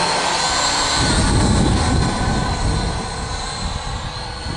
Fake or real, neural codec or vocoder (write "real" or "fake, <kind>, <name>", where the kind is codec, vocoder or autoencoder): real